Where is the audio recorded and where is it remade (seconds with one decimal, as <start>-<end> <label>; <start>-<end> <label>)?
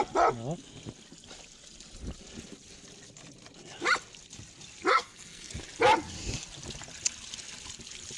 0.0-4.9 recorded; 4.9-5.5 remade; 5.5-8.2 recorded